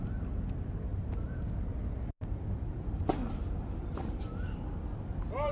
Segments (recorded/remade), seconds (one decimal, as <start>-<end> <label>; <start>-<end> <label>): 0.0-5.5 recorded